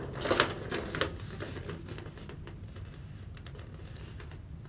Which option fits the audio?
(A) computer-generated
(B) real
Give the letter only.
B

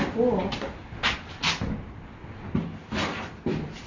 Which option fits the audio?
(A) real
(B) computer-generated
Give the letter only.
A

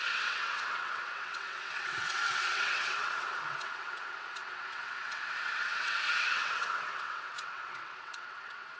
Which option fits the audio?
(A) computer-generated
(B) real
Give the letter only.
A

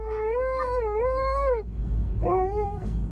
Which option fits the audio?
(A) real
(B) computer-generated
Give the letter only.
B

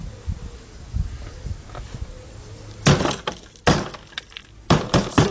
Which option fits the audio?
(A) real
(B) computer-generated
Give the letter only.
A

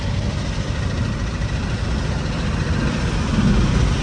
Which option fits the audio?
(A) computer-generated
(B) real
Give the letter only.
B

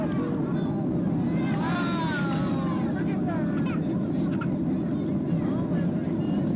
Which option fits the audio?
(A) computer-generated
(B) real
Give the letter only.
B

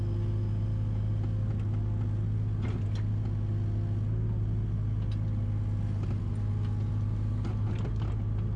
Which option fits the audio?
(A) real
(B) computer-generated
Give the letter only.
A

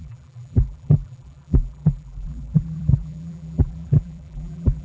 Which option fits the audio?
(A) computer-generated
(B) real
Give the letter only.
A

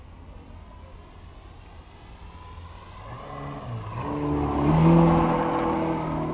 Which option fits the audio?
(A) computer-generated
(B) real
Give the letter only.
B